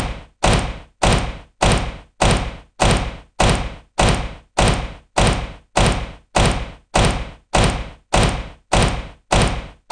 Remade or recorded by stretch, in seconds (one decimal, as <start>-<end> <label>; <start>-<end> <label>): 0.0-9.9 recorded